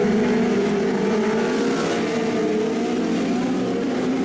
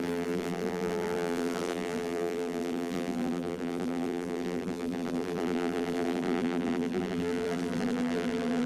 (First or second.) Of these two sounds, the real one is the first